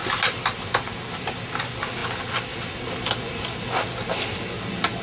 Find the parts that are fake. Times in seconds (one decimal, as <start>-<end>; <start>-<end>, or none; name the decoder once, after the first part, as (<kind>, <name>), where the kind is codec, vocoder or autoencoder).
none